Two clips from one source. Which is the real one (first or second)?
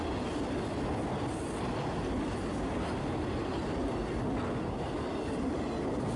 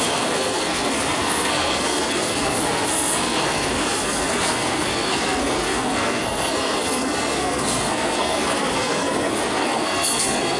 first